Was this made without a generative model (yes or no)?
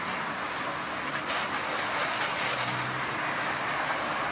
yes